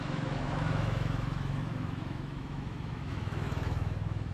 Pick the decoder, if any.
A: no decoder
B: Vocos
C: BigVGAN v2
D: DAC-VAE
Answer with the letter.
D